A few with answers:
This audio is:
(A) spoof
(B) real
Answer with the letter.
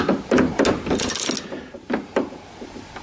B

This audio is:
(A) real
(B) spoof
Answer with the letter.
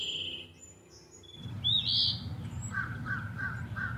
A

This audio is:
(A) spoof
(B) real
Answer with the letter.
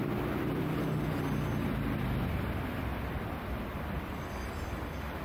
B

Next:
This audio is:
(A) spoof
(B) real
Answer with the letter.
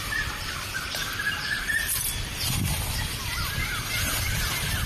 B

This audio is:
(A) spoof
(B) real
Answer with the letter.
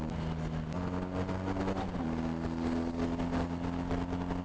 B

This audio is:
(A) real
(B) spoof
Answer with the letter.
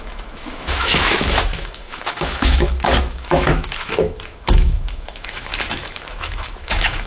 B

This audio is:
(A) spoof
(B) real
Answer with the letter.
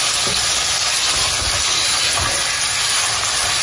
B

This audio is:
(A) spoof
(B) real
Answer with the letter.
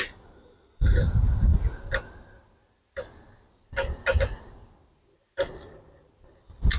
B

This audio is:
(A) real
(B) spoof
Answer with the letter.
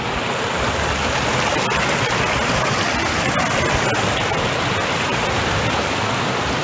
A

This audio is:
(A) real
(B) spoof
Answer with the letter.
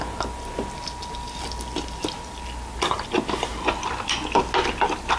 A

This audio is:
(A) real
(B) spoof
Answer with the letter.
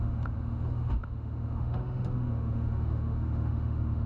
B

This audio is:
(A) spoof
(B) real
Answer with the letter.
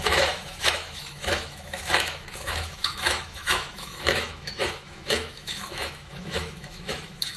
A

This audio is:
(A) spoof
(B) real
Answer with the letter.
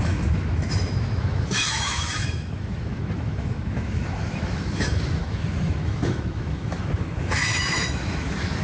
A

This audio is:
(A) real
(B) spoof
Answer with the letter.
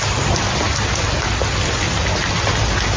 A